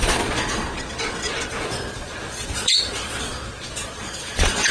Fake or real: fake